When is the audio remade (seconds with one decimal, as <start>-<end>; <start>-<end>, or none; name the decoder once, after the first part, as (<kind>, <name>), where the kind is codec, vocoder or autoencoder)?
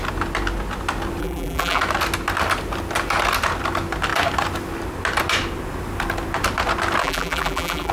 1.2-1.8 (vocoder, BigVGAN v2); 7.0-7.9